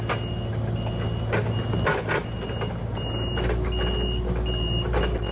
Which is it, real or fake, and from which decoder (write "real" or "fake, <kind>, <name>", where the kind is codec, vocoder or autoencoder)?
real